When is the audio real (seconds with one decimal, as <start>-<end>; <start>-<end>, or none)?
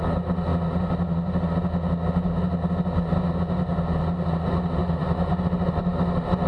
0.0-6.5